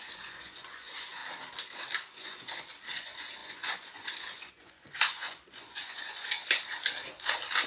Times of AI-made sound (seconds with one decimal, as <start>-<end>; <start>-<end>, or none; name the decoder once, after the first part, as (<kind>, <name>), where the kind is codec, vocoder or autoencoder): 0.0-1.2 (vocoder, Vocos); 2.1-6.4